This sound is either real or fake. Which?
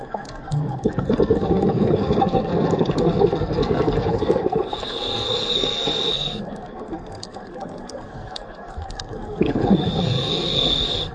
fake